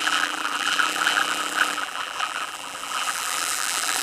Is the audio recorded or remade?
remade